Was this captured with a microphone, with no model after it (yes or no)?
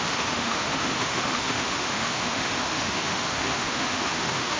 no